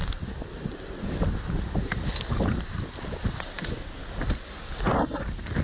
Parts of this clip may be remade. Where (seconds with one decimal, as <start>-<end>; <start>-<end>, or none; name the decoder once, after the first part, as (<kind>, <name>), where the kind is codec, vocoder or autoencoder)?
none